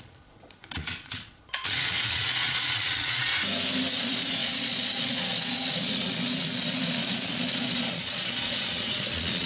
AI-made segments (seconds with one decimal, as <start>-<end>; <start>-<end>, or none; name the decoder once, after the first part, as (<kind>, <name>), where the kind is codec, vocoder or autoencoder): 0.0-3.3 (vocoder, Vocos); 3.9-9.5